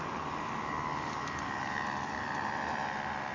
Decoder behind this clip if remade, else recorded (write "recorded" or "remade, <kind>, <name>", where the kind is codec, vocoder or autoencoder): remade, vocoder, BigVGAN v2